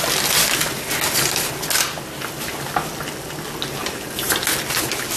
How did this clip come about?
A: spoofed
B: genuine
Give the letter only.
B